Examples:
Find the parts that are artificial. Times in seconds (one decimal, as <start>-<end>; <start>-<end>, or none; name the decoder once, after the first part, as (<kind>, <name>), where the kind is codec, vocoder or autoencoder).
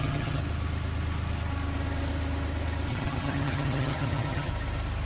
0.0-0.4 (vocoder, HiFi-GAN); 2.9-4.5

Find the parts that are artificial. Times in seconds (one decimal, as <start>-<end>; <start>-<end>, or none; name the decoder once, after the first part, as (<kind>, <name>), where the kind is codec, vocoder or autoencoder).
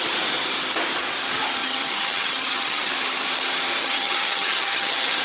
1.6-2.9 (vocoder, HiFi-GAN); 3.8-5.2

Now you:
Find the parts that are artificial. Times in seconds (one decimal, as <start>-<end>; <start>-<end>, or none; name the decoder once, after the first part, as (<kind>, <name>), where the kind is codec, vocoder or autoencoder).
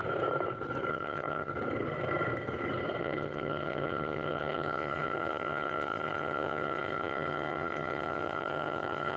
0.9-1.5 (vocoder, HiFi-GAN); 3.0-9.2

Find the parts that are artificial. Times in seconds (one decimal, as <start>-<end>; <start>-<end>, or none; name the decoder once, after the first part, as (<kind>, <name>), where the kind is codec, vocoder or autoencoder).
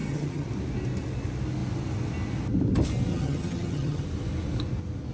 0.0-0.5 (vocoder, HiFi-GAN); 3.1-4.0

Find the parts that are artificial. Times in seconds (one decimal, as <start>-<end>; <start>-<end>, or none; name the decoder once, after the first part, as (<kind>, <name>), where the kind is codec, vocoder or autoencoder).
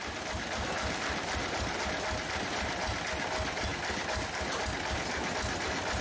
none